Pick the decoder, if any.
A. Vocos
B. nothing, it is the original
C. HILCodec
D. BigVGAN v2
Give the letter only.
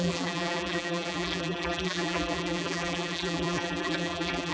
D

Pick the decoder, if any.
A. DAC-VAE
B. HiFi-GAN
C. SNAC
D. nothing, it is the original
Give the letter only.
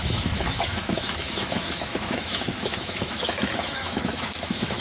A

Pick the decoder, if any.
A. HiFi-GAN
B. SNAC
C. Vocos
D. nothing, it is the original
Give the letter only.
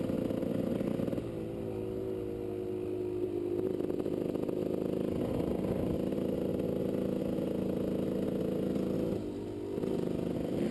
D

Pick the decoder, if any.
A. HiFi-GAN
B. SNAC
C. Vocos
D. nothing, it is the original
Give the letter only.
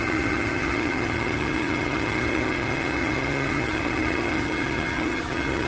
A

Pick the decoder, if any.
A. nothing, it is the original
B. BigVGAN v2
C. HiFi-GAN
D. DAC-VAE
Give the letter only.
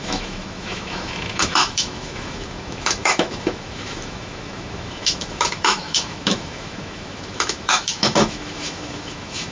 D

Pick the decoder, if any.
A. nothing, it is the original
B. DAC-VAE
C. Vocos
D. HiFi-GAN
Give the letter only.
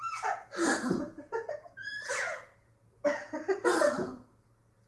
C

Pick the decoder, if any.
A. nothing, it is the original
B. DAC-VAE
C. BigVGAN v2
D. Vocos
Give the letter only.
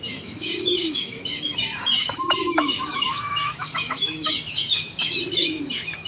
B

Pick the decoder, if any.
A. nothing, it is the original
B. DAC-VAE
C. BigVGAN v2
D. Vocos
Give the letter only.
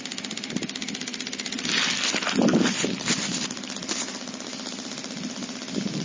A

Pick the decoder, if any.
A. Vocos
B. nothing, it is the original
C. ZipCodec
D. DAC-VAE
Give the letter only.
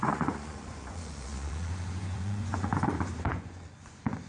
A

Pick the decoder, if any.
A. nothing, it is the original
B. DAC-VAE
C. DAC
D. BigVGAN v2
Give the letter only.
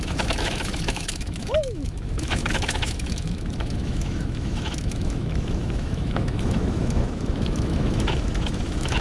B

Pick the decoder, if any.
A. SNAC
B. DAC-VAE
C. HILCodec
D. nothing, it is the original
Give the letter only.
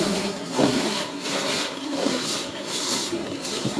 A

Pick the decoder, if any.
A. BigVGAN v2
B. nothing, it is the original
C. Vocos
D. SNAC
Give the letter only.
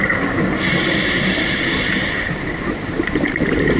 A